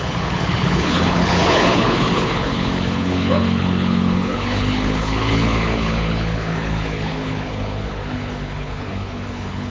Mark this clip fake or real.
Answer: fake